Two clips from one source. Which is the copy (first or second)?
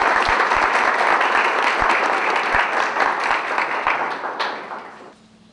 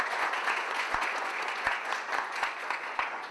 second